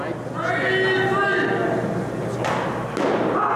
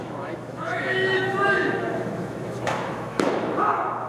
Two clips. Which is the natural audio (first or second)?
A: first